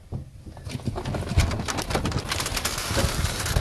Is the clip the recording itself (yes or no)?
yes